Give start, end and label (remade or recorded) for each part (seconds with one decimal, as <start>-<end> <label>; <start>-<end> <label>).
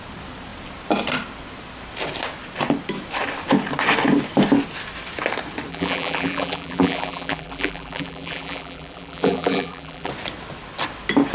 0.0-5.7 recorded; 5.7-10.1 remade; 10.1-11.3 recorded